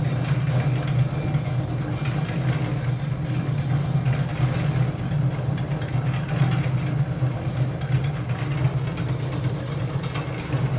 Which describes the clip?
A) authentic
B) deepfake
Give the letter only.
A